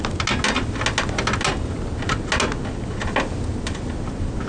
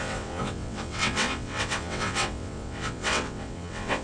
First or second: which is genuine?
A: first